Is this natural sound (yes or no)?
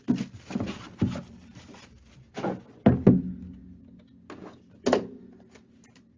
yes